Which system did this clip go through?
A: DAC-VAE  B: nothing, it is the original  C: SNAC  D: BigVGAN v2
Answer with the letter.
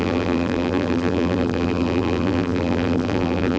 D